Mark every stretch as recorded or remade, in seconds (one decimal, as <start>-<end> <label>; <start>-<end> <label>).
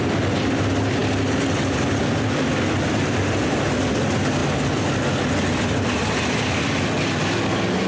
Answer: 0.0-7.9 recorded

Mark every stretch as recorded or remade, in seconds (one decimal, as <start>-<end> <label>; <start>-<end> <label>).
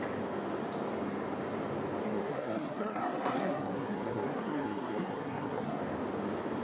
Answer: 0.0-2.0 recorded; 2.0-5.8 remade; 5.8-6.6 recorded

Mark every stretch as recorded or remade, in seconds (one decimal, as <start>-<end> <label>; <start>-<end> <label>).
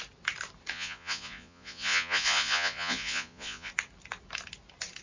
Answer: 0.0-0.7 recorded; 0.7-3.7 remade; 3.7-5.0 recorded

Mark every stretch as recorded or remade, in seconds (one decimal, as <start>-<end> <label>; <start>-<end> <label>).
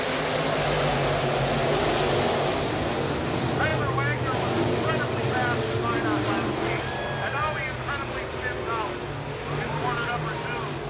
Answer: 0.0-10.9 recorded